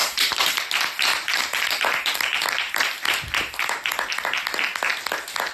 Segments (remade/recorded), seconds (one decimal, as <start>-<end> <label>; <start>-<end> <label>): 0.0-0.5 remade; 0.5-1.1 recorded; 1.1-4.1 remade; 4.1-5.5 recorded